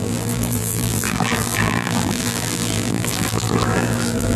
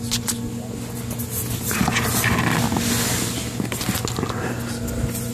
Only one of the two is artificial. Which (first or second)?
first